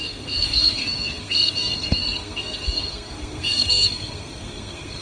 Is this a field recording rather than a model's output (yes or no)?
no